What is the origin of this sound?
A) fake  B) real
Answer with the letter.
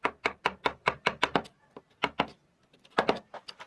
B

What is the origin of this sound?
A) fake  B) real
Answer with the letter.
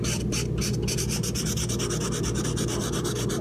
A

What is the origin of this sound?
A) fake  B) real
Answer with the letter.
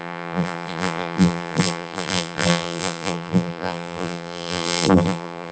A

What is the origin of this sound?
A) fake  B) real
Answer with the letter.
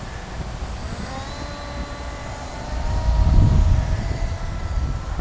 B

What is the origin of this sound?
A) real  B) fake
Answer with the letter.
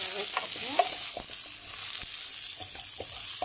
A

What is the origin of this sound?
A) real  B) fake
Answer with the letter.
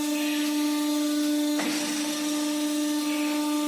A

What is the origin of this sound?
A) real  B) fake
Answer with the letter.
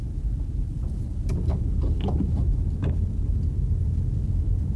A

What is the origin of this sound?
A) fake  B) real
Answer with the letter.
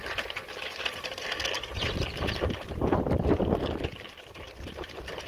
A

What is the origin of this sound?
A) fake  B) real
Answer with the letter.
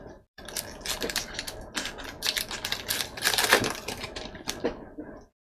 A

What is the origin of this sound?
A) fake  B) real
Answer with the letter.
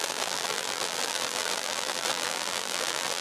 A